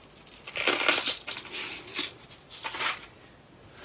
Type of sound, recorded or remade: recorded